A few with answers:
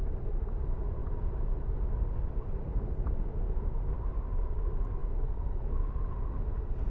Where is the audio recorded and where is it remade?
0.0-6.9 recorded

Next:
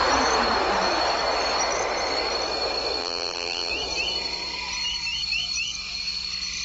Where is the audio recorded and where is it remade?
0.0-3.0 recorded; 3.0-3.7 remade; 3.7-6.6 recorded

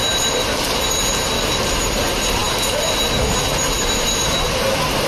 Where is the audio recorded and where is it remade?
0.0-5.1 recorded